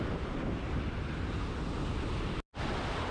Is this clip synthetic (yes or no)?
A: no